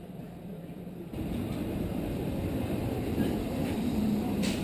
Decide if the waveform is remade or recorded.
remade